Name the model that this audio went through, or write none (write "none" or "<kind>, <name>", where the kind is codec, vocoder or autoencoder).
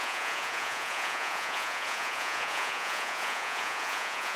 vocoder, Vocos